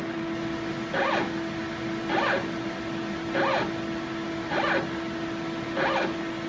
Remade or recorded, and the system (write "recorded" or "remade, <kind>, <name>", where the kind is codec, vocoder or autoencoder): recorded